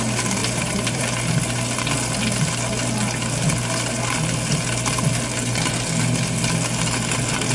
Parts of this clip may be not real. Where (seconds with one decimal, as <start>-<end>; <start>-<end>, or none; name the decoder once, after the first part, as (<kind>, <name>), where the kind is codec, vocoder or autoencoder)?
0.4-1.0 (vocoder, BigVGAN v2)